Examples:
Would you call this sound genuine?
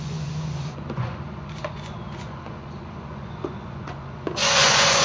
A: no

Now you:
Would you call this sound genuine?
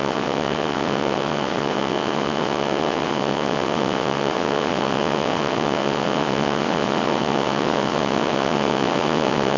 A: no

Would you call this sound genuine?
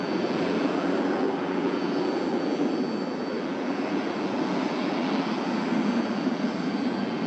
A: no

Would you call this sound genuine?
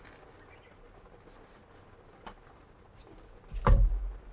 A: yes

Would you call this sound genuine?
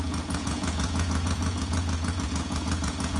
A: no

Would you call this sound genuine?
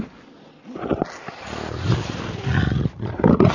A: yes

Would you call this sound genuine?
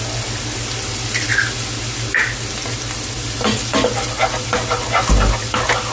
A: yes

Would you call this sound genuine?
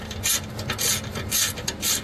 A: yes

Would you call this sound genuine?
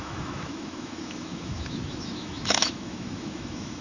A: no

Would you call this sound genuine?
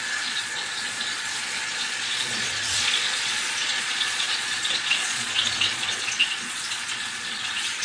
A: no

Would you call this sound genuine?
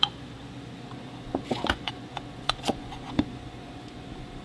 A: no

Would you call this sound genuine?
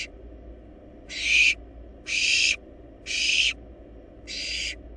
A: yes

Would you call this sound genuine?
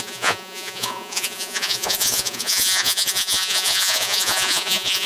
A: no